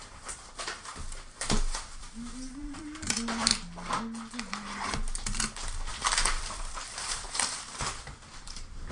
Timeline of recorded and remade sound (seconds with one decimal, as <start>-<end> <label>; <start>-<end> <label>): 0.0-0.9 remade; 0.9-2.0 recorded; 2.0-3.5 remade; 3.5-5.9 recorded; 5.9-8.9 remade